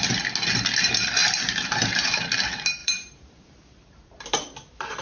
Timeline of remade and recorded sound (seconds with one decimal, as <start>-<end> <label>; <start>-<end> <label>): 0.0-1.2 recorded; 1.2-2.2 remade; 2.2-2.8 recorded; 2.8-5.0 remade